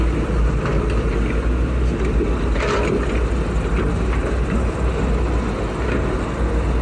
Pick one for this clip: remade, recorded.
recorded